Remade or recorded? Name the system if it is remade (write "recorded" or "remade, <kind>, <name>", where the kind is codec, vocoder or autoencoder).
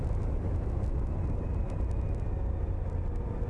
recorded